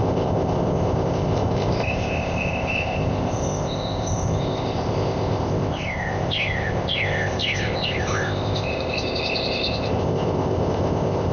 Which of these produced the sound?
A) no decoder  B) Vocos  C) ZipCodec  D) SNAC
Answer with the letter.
C